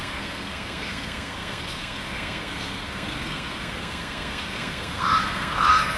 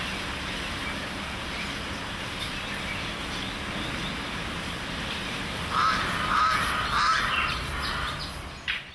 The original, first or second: second